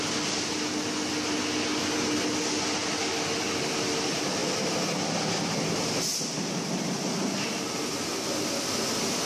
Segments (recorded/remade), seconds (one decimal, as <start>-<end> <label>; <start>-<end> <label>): 0.0-9.3 recorded